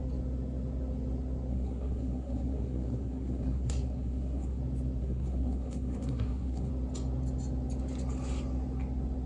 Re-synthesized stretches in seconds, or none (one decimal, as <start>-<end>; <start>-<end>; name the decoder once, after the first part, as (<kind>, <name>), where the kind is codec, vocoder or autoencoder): 1.5-4.6 (codec, SNAC); 5.0-6.7